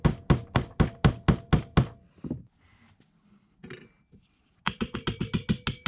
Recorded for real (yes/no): yes